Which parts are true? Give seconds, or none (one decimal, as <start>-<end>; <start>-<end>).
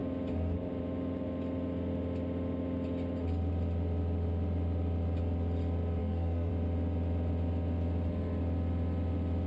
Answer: 0.0-6.0; 6.5-9.5